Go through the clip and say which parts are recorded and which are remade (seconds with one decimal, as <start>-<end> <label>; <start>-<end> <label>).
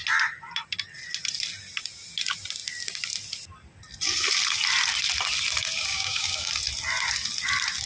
0.0-5.9 recorded; 5.9-6.5 remade; 6.5-7.9 recorded